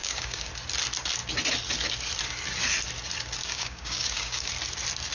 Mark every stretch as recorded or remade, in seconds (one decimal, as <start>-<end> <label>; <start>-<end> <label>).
0.0-0.5 remade; 0.5-3.4 recorded; 3.4-4.5 remade; 4.5-5.1 recorded